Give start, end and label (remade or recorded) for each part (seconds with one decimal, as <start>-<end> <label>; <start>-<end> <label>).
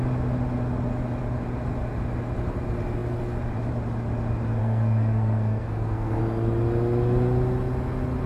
0.0-4.6 recorded; 4.6-6.2 remade; 6.2-8.3 recorded